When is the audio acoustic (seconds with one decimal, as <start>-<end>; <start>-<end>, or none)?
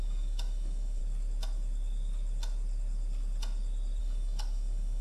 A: 1.0-4.0